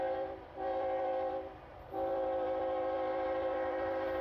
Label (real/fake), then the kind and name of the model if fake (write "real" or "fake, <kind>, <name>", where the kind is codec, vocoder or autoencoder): fake, vocoder, BigVGAN v2